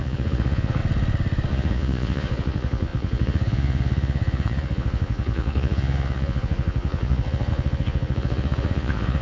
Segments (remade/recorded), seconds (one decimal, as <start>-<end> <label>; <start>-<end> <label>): 0.0-0.8 remade; 0.8-1.5 recorded; 1.5-9.2 remade